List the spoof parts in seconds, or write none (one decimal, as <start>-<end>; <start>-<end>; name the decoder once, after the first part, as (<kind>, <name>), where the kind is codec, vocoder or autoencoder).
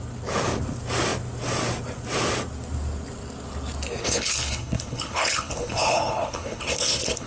4.0-7.3 (codec, HILCodec)